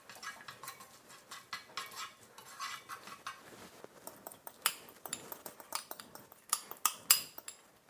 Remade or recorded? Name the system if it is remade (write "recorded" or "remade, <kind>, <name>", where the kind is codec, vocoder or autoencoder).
recorded